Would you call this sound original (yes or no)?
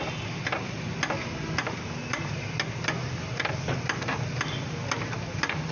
yes